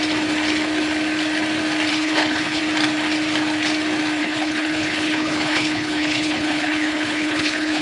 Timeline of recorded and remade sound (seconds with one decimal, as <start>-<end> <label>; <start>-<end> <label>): 0.0-1.9 recorded; 1.9-2.6 remade; 2.6-4.2 recorded; 4.2-7.8 remade